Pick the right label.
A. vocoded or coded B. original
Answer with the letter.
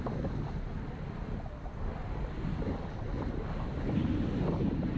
B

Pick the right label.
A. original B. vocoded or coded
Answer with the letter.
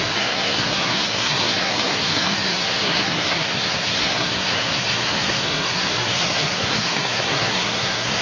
B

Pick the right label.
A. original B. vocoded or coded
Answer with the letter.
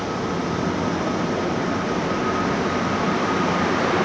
A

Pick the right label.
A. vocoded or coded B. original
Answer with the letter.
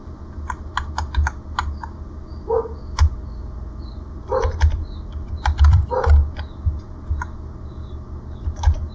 B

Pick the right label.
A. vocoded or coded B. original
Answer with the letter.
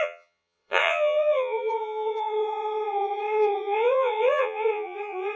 A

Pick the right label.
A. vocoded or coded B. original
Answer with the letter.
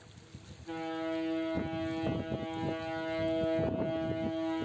B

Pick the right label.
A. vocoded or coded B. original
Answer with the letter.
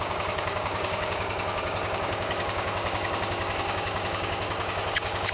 A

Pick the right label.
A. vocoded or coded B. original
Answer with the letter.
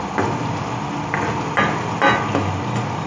B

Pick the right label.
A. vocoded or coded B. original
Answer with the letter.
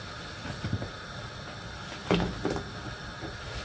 B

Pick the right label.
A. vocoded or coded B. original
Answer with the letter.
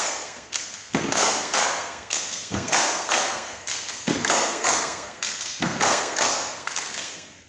A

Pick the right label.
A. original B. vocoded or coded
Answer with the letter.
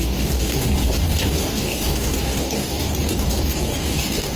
B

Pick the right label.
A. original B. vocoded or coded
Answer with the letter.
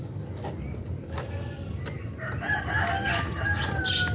A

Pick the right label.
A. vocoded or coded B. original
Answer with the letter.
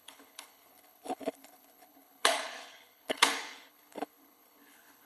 A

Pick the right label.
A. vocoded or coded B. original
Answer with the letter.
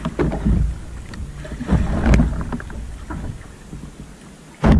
B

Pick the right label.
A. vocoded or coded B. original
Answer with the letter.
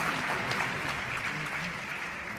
B